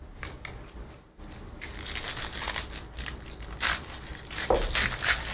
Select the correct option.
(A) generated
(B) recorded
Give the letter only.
B